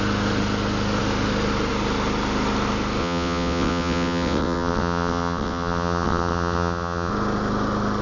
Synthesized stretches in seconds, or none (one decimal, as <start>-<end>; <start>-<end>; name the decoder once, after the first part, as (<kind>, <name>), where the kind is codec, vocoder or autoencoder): 3.0-7.1 (vocoder, WaveNeXt)